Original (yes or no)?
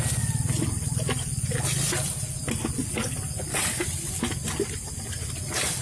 yes